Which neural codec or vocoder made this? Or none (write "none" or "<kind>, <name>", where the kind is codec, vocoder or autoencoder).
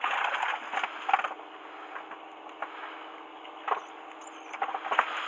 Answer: none